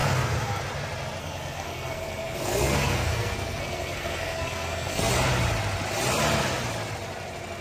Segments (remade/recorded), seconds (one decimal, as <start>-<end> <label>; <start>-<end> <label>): 0.0-0.6 remade; 0.6-1.2 recorded; 1.2-5.1 remade; 5.1-7.6 recorded

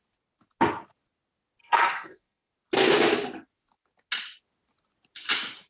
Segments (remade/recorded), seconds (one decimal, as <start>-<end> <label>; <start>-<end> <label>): 0.0-1.6 recorded; 1.6-2.5 remade; 2.5-5.7 recorded

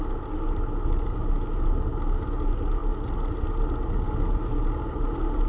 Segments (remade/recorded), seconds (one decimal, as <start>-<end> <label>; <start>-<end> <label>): 0.0-5.5 recorded